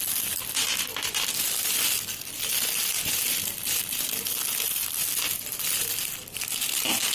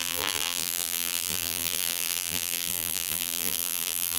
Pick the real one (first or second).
first